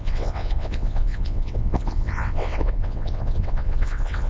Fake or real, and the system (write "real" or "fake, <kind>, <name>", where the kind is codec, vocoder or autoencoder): fake, vocoder, WaveNeXt